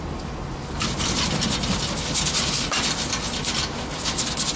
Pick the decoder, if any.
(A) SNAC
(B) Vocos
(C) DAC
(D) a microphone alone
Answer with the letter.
D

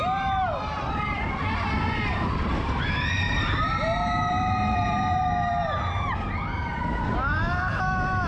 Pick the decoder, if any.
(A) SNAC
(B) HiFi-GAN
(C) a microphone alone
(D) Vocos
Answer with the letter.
C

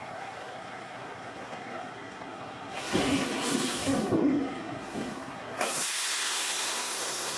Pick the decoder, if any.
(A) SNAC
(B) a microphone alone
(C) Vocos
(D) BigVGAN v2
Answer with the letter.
A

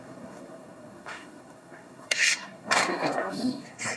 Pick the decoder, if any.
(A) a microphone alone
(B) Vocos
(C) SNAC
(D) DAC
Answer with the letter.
C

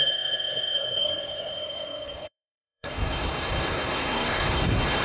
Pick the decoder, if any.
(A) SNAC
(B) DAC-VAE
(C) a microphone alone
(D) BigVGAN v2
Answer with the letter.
A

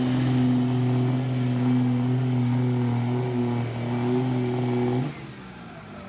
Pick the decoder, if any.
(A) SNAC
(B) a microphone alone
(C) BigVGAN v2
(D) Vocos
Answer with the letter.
B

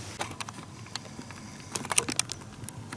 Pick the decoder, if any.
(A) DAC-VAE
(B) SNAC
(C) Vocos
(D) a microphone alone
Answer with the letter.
D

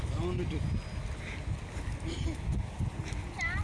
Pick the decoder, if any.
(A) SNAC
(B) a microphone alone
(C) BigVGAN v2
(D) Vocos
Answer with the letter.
B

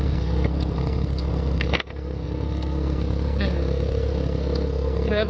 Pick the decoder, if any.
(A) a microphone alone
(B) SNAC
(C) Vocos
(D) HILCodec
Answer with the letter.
B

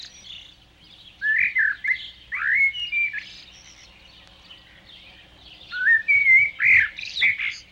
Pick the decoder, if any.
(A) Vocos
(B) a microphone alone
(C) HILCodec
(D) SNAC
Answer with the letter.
B